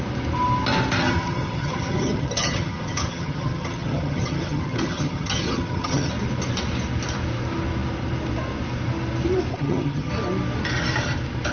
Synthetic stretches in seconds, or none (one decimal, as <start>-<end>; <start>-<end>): 1.0-6.1; 9.5-10.1